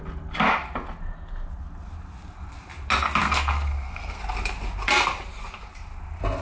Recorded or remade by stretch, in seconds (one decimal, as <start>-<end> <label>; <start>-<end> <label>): 0.0-3.2 recorded; 3.2-4.2 remade; 4.2-6.4 recorded